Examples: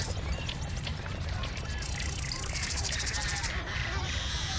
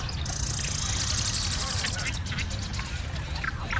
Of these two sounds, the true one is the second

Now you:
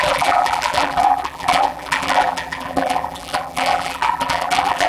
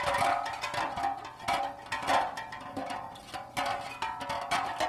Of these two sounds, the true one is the second